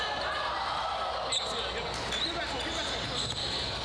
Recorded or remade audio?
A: recorded